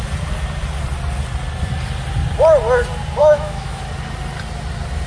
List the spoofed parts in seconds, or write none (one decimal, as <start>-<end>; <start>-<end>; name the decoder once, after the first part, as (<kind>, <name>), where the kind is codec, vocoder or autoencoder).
3.2-3.8 (autoencoder, DAC-VAE)